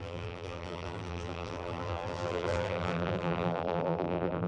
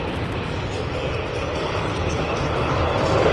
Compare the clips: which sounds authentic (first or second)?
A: second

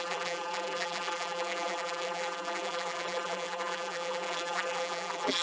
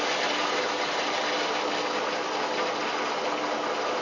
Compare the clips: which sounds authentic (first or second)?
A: second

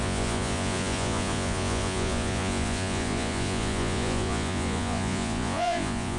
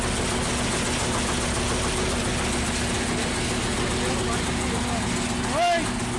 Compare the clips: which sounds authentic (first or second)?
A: second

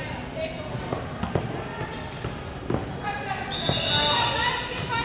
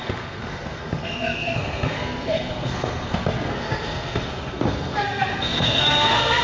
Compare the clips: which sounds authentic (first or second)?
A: first